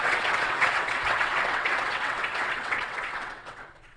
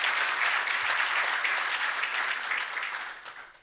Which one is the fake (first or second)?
first